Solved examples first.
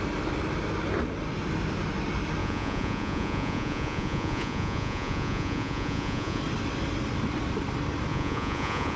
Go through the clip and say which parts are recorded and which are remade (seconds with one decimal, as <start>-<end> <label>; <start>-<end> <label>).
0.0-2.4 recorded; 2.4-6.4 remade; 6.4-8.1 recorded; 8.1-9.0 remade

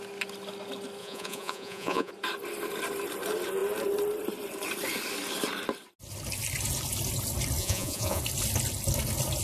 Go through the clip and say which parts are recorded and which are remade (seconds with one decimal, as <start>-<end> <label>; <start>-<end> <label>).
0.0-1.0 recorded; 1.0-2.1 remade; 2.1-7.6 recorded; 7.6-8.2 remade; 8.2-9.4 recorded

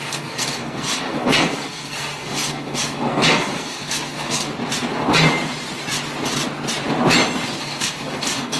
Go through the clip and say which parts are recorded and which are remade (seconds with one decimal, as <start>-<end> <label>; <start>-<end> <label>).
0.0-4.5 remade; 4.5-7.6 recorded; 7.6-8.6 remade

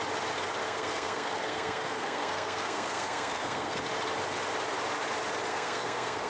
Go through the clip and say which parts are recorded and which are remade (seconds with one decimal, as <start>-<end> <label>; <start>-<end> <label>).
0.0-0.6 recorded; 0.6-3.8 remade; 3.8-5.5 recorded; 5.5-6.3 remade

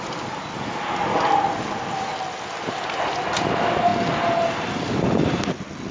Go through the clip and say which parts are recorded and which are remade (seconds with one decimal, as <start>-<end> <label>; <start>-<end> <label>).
0.0-5.9 recorded

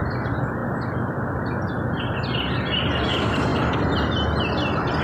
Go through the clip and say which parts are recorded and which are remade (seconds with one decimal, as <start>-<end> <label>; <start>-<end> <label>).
0.0-5.0 recorded